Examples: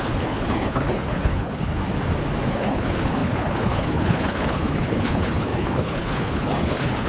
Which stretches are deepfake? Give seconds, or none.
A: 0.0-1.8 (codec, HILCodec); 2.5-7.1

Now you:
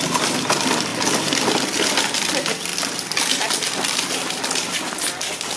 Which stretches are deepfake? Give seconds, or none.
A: none

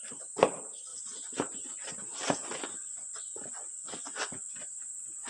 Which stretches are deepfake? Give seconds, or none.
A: none

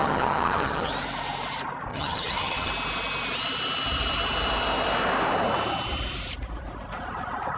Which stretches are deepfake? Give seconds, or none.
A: 0.0-0.9 (vocoder, HiFi-GAN); 1.9-2.7